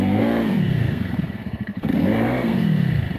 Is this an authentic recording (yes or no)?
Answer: no